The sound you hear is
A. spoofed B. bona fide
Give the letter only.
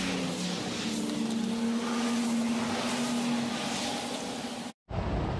B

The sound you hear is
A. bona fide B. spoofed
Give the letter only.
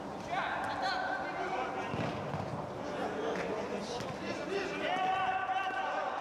A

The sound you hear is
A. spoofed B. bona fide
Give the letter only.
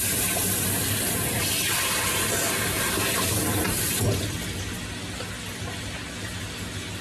B